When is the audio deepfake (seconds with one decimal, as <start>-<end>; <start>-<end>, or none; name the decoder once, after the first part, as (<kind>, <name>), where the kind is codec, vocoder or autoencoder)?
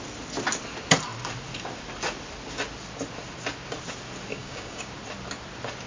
4.3-4.9 (codec, DAC)